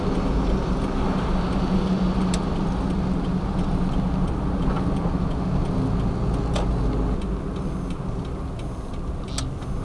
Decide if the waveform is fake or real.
real